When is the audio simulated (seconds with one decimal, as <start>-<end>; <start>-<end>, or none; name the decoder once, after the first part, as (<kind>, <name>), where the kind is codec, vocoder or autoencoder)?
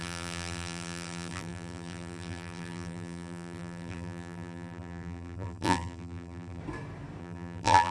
0.0-6.6 (vocoder, BigVGAN v2); 7.2-7.9